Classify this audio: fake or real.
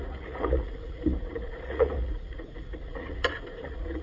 fake